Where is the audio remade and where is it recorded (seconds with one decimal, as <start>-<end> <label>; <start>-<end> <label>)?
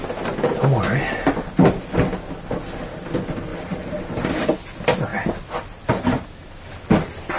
0.0-7.4 recorded